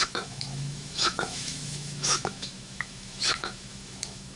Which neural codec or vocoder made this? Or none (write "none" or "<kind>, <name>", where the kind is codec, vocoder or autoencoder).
autoencoder, DAC-VAE